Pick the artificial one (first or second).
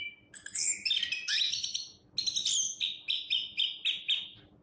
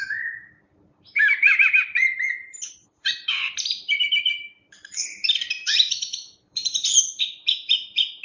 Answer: second